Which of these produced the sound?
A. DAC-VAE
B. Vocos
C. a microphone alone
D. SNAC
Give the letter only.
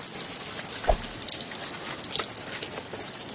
C